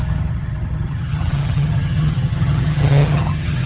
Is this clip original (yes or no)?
no